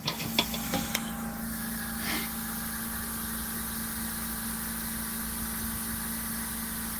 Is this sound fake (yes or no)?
no